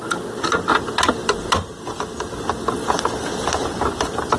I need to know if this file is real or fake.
real